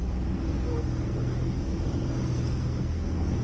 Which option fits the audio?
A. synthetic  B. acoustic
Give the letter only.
A